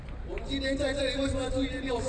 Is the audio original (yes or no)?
yes